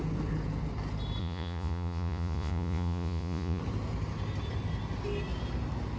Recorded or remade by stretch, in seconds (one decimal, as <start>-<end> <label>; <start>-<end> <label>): 0.0-1.2 recorded; 1.2-3.6 remade; 3.6-6.0 recorded